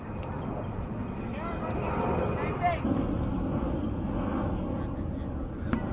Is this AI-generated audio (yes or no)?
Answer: no